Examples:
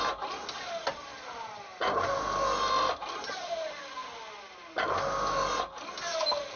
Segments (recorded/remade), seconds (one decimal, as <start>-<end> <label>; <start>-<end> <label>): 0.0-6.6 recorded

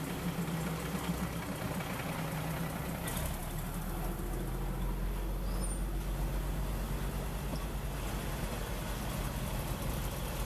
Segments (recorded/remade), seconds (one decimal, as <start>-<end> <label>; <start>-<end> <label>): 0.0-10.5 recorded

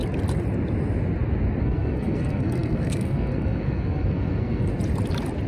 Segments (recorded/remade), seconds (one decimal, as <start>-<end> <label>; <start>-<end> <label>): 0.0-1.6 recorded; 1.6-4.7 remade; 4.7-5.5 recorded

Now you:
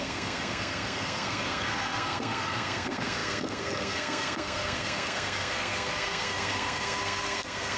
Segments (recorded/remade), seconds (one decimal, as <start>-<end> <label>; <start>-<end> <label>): 0.0-7.8 remade